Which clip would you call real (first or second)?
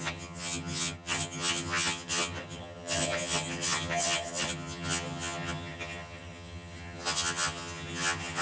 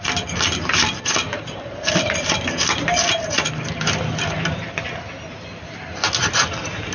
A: second